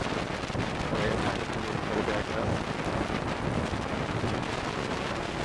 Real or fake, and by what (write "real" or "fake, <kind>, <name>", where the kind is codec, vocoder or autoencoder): real